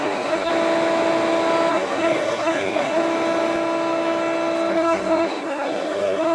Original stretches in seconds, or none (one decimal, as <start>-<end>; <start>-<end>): 0.5-1.7; 3.0-4.7